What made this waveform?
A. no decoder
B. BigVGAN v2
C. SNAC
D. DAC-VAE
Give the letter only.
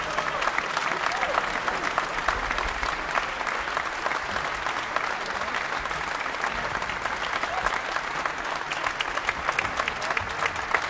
A